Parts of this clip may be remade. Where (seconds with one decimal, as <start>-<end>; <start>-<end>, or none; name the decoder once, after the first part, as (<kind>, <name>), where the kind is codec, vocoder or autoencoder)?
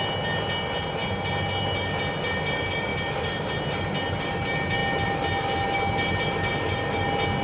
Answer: none